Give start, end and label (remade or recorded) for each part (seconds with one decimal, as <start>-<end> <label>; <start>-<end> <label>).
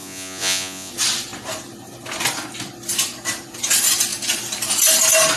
0.0-0.9 remade; 0.9-5.4 recorded